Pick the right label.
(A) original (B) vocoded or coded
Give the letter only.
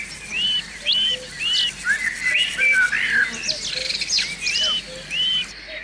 A